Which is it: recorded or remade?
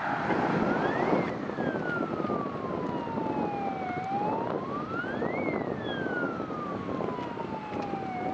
recorded